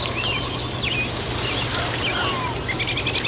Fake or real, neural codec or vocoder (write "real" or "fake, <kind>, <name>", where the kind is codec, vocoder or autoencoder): real